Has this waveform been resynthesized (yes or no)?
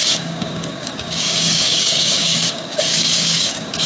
yes